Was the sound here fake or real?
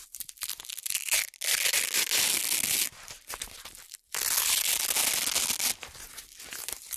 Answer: real